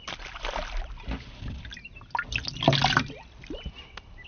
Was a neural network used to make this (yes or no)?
no